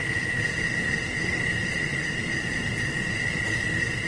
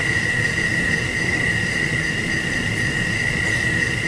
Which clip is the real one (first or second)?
second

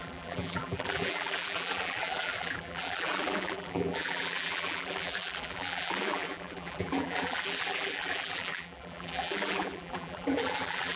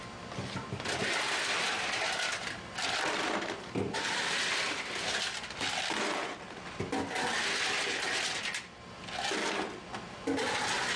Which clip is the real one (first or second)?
second